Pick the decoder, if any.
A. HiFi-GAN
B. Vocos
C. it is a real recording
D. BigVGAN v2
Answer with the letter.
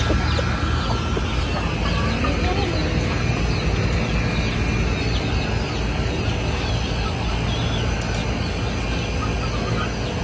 C